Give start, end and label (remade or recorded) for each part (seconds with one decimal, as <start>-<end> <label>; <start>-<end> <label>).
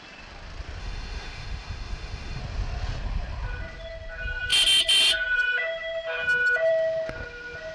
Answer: 0.0-0.8 recorded; 0.8-2.4 remade; 2.4-7.7 recorded